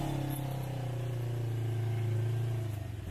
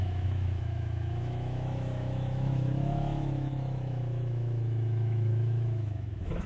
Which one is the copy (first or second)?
second